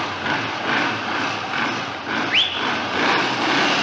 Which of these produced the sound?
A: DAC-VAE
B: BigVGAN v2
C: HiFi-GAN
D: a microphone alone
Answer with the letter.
D